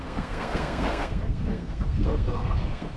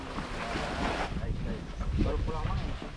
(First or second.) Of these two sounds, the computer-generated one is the first